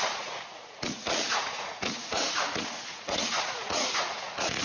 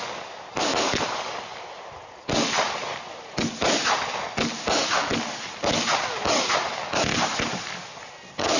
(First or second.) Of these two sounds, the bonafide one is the second